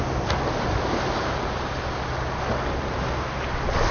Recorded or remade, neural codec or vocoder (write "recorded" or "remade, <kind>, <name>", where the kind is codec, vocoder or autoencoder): recorded